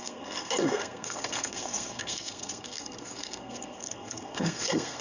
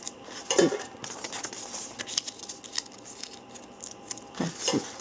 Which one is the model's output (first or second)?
first